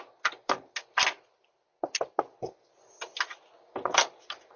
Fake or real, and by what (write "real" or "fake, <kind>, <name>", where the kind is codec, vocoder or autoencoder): real